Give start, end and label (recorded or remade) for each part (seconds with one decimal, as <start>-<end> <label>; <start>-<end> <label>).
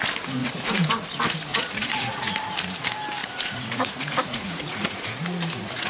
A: 0.0-0.4 recorded; 0.4-0.9 remade; 0.9-1.5 recorded; 1.5-2.3 remade; 2.3-3.2 recorded; 3.2-5.9 remade